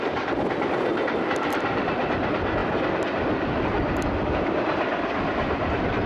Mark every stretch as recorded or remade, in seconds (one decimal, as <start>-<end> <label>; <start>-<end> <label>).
0.0-6.1 remade